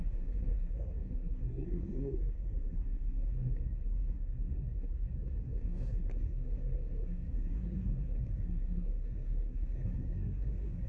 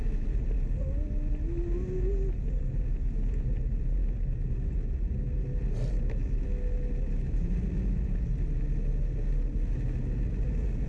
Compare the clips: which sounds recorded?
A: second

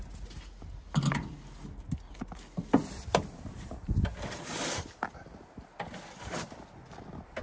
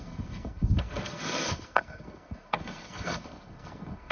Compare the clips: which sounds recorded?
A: first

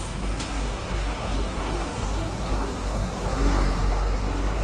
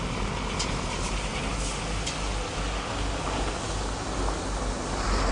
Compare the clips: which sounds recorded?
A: second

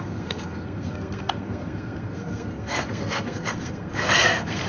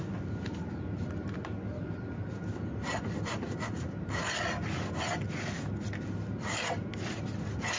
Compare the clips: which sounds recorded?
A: second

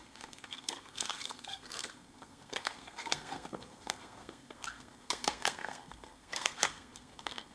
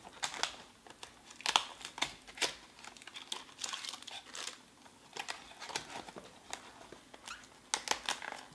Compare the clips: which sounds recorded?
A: second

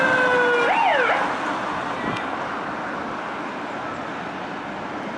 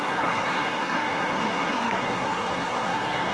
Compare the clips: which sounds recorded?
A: first